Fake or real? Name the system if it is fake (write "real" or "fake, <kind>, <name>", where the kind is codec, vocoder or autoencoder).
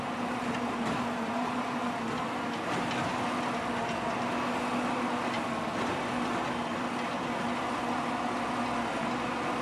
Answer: real